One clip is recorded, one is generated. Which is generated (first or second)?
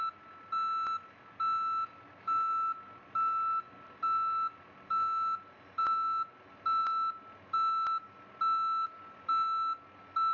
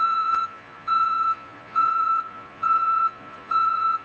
second